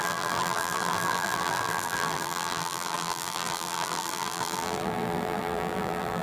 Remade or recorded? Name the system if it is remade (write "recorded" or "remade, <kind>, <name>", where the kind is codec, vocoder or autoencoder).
remade, vocoder, BigVGAN v2